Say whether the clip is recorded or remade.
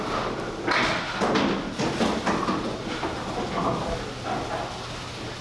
recorded